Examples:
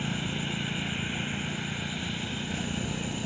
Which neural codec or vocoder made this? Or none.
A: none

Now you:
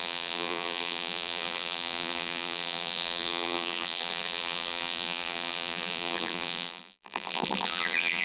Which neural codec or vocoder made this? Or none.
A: vocoder, BigVGAN v2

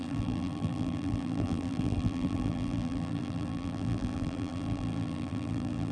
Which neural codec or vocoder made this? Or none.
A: vocoder, BigVGAN v2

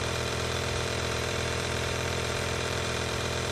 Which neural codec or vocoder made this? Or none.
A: vocoder, BigVGAN v2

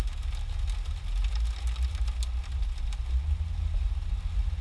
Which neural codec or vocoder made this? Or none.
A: none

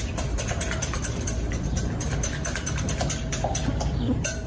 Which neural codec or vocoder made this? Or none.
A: vocoder, BigVGAN v2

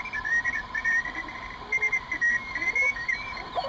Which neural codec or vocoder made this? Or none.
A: vocoder, BigVGAN v2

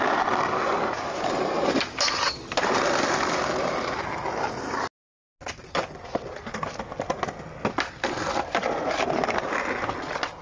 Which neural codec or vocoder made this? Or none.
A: none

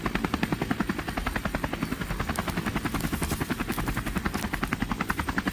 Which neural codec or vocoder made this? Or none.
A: none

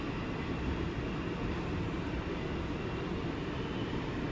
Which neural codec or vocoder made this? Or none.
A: vocoder, BigVGAN v2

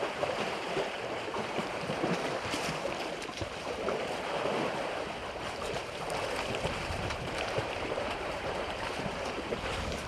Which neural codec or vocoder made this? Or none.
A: vocoder, BigVGAN v2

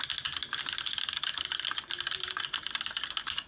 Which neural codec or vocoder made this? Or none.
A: none